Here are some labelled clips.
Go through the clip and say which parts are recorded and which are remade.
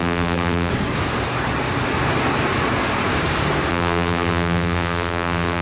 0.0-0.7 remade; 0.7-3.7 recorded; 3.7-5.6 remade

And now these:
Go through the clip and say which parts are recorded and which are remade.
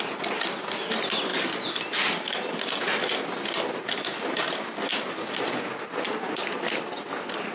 0.0-7.5 recorded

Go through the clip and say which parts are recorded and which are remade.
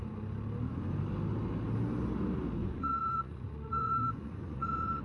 0.0-2.6 recorded; 2.6-5.0 remade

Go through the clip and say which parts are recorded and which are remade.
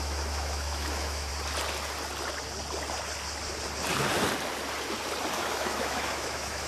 0.0-1.3 remade; 1.3-5.3 recorded; 5.3-6.7 remade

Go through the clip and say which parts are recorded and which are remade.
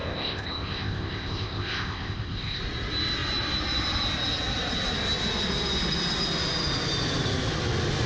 0.0-2.6 remade; 2.6-8.1 recorded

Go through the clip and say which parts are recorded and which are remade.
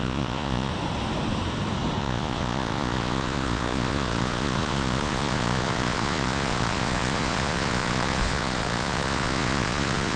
0.0-0.7 remade; 0.7-2.0 recorded; 2.0-10.2 remade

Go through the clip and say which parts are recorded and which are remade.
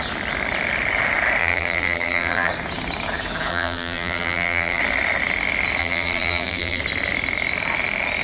0.0-1.4 recorded; 1.4-2.5 remade; 2.5-3.5 recorded; 3.5-4.8 remade; 4.8-5.8 recorded; 5.8-6.8 remade; 6.8-8.2 recorded